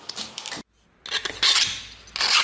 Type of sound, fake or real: real